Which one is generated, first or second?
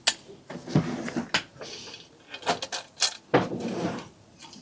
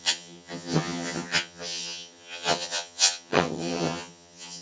second